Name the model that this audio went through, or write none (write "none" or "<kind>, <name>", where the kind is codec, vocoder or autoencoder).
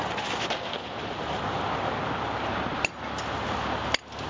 none